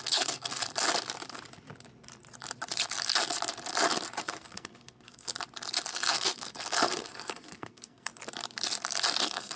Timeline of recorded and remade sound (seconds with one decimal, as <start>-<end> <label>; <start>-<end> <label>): 0.0-0.6 remade; 0.6-4.2 recorded; 4.2-5.3 remade; 5.3-5.9 recorded; 5.9-8.1 remade; 8.1-9.2 recorded; 9.2-9.6 remade